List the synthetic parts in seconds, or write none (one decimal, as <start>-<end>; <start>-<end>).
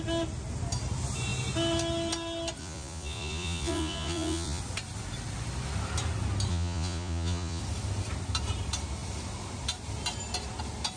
2.6-4.6; 6.5-7.6